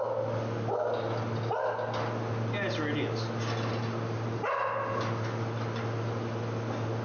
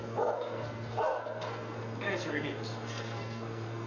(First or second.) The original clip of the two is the first